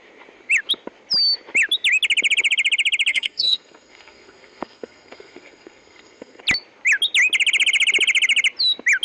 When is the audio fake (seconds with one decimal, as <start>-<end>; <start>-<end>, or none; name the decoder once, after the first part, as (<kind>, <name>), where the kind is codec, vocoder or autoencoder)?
3.1-6.4 (codec, SNAC)